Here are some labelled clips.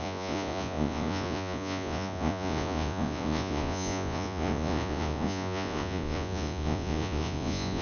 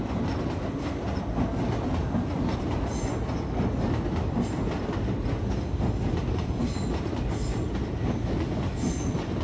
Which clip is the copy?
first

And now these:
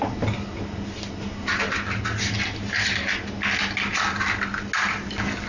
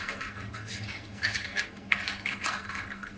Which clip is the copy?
second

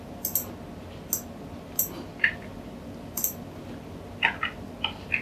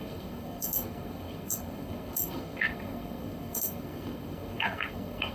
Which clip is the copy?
second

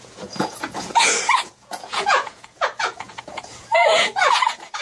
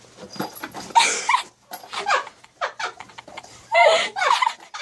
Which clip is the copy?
first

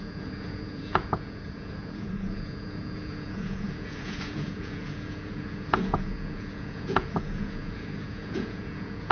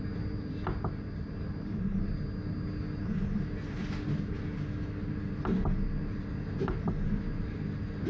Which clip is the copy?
first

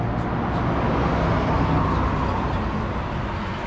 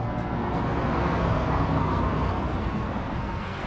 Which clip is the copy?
second